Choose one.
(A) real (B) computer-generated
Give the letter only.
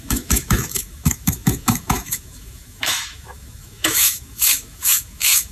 B